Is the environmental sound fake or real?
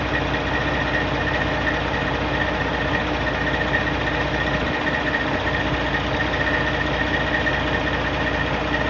real